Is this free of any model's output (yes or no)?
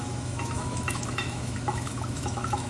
no